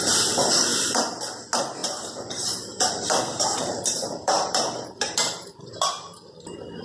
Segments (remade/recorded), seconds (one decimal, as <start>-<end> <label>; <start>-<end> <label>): 0.0-0.7 recorded; 0.7-1.2 remade; 1.2-1.8 recorded; 1.8-5.7 remade; 5.7-6.8 recorded